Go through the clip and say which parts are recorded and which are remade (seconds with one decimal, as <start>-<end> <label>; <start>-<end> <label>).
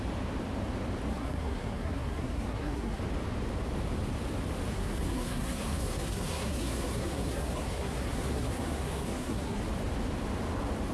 0.0-1.1 recorded; 1.1-3.0 remade; 3.0-4.7 recorded; 4.7-9.6 remade; 9.6-10.9 recorded